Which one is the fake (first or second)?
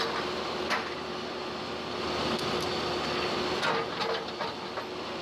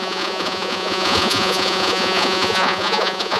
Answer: second